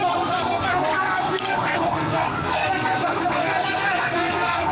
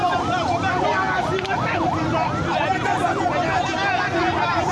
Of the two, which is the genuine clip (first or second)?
second